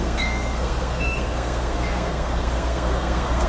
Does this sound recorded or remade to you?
remade